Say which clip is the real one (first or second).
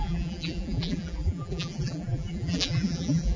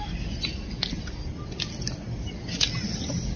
second